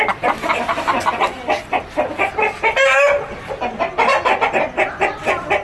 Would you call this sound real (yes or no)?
yes